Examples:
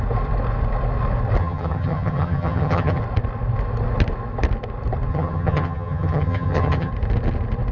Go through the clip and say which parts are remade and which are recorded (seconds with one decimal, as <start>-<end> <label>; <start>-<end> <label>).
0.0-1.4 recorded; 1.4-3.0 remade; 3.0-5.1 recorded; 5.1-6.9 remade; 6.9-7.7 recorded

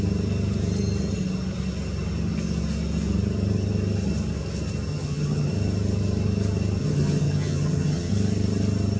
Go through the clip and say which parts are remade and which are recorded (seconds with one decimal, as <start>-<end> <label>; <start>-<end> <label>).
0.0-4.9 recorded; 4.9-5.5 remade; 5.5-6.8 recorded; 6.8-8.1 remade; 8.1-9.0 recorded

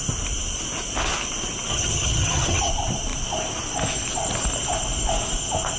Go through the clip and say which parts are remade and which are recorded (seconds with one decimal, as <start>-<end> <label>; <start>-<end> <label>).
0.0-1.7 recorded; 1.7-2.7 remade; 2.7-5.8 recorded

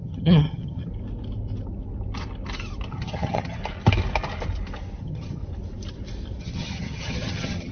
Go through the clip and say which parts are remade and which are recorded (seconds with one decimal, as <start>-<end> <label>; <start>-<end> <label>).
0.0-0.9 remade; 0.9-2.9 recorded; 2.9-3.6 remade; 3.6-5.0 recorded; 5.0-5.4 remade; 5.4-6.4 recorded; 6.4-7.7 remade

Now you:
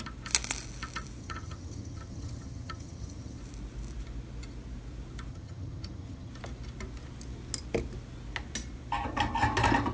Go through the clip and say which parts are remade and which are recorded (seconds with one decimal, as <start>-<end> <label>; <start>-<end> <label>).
0.0-1.2 recorded; 1.2-3.4 remade; 3.4-5.3 recorded; 5.3-6.3 remade; 6.3-9.9 recorded

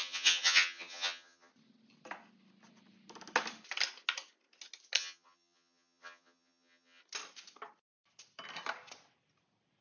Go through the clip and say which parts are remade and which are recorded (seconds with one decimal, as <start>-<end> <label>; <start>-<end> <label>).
0.0-1.5 remade; 1.5-5.0 recorded; 5.0-7.0 remade; 7.0-9.8 recorded